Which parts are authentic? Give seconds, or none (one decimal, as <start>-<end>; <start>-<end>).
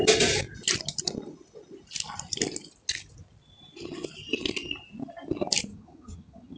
0.0-5.7